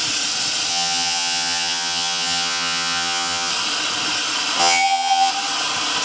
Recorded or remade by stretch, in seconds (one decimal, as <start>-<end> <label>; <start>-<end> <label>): 0.0-0.7 recorded; 0.7-3.5 remade; 3.5-4.6 recorded; 4.6-5.3 remade; 5.3-6.0 recorded